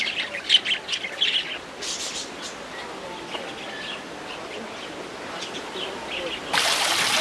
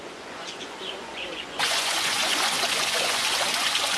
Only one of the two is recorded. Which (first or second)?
first